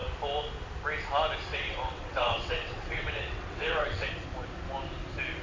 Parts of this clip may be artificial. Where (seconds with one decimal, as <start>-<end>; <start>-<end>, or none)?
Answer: 1.5-4.1